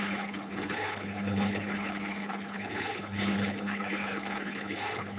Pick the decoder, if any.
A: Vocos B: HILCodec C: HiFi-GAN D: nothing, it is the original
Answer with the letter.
B